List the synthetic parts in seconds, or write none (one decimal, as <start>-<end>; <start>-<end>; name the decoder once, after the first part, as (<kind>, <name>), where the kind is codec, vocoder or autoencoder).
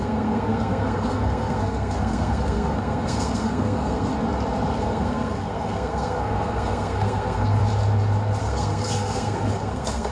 0.0-4.1 (codec, SNAC); 4.8-7.6; 8.4-10.1